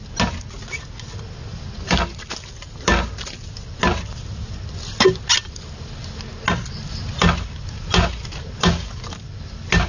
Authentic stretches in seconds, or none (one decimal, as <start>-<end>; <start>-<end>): 0.0-9.9